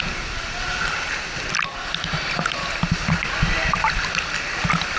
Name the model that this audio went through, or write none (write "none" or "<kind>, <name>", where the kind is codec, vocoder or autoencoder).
none